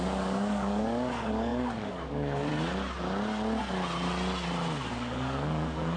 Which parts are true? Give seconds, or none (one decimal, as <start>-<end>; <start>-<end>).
2.5-4.9